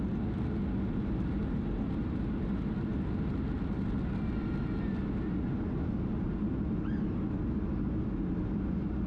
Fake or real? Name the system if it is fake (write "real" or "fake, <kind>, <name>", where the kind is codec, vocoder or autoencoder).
real